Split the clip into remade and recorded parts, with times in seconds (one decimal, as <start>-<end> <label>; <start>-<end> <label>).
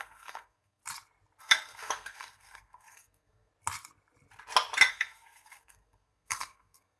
0.0-0.8 remade; 0.8-1.4 recorded; 1.4-3.5 remade; 3.5-4.9 recorded; 4.9-7.0 remade